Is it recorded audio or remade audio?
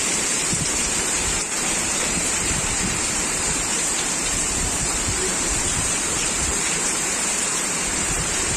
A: remade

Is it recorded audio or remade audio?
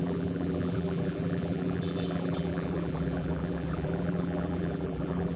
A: remade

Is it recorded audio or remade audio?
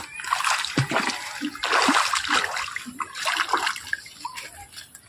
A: recorded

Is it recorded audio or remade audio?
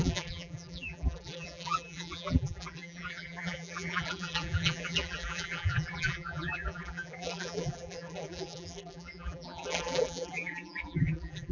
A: remade